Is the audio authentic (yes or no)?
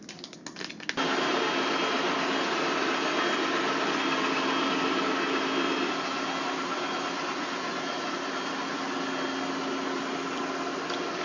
yes